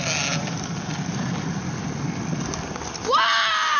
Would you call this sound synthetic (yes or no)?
no